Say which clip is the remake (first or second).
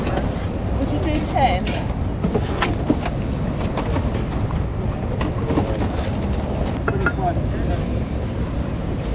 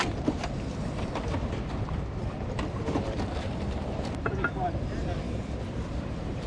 second